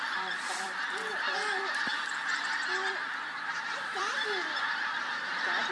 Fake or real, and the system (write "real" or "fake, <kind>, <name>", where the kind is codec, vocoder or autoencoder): fake, vocoder, BigVGAN v2